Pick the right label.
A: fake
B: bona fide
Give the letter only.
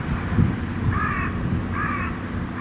A